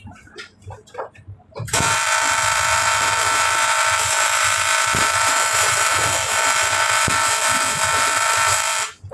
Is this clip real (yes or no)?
no